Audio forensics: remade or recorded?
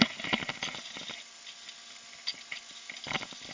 recorded